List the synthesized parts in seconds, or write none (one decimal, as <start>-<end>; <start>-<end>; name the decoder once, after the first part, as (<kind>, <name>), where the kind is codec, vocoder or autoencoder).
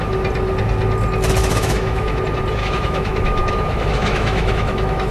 1.4-2.2 (autoencoder, DAC-VAE); 2.6-5.1